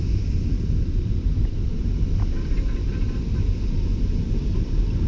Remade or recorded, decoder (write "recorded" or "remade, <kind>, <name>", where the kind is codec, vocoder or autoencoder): remade, vocoder, BigVGAN v2